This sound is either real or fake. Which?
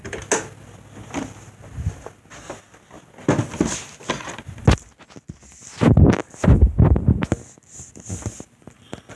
real